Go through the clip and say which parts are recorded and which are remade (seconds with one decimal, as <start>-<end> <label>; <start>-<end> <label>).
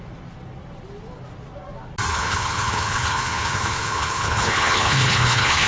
0.0-2.1 recorded; 2.1-5.7 remade